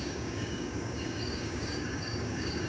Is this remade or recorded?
remade